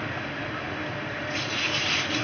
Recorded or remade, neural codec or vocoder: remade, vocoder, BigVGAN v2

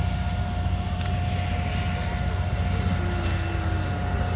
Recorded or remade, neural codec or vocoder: recorded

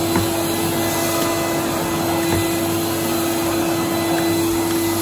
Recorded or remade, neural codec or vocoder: recorded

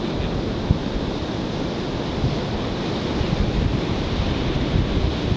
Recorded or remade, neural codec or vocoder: recorded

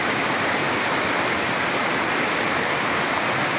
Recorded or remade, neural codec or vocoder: remade, vocoder, BigVGAN v2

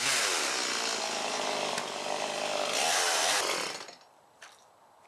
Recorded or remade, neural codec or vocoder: recorded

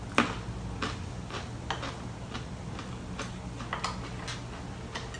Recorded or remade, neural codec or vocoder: recorded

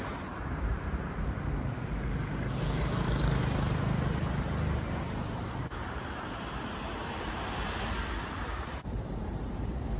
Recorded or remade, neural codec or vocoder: remade, vocoder, BigVGAN v2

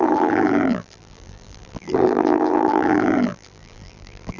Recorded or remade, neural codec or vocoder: remade, vocoder, BigVGAN v2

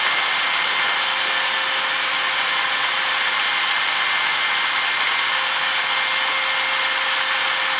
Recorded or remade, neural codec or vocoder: recorded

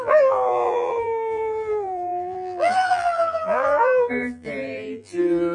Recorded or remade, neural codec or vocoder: remade, vocoder, BigVGAN v2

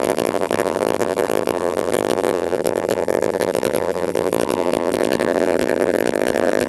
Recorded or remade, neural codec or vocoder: remade, vocoder, BigVGAN v2